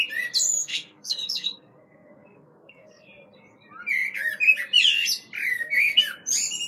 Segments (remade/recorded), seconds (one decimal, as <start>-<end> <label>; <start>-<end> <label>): 0.0-0.6 recorded; 0.6-3.1 remade; 3.1-5.5 recorded; 5.5-6.0 remade; 6.0-6.7 recorded